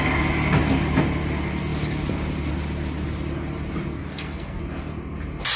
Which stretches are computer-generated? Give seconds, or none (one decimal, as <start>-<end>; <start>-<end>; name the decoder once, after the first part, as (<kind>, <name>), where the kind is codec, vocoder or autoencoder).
3.9-4.6 (codec, SNAC)